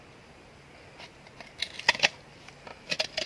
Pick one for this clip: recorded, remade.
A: recorded